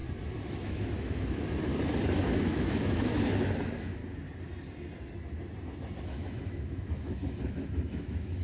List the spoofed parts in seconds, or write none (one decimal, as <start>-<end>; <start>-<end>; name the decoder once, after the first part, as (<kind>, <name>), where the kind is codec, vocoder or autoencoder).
0.5-1.7 (autoencoder, DAC-VAE); 2.4-4.0; 6.0-8.4